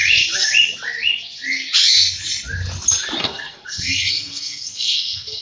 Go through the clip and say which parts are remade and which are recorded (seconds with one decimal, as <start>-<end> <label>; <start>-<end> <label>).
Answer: 0.0-3.2 recorded; 3.2-5.4 remade